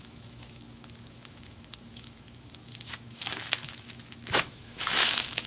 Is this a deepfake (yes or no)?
yes